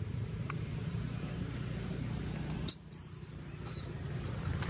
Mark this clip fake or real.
fake